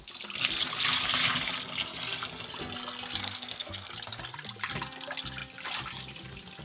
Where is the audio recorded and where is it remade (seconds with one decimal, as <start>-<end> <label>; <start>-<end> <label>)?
0.0-3.2 recorded; 3.2-3.9 remade; 3.9-6.6 recorded